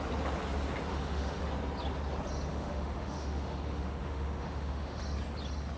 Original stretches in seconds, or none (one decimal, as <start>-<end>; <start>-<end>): 0.0-0.9; 1.4-2.5; 5.0-5.8